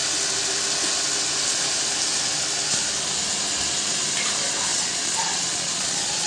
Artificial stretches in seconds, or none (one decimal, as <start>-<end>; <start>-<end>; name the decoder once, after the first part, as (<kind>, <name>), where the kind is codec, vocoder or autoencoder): 4.7-6.3 (vocoder, Vocos)